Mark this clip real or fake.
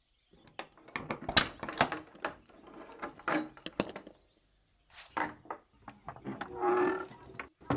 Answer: real